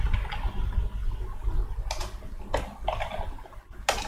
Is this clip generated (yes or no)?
no